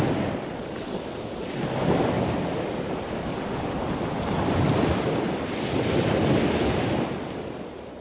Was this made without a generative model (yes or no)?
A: yes